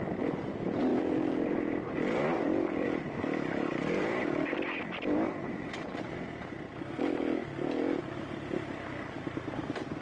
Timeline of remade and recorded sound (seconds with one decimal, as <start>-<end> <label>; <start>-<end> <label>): 0.0-0.9 recorded; 0.9-5.7 remade; 5.7-10.0 recorded

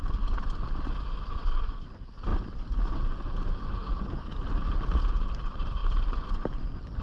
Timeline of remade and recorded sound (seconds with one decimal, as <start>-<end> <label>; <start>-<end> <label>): 0.0-2.3 remade; 2.3-5.0 recorded; 5.0-7.0 remade

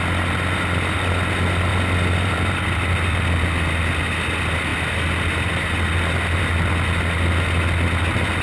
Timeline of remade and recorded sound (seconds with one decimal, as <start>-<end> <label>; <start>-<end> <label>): 0.0-1.7 recorded; 1.7-2.9 remade; 2.9-8.4 recorded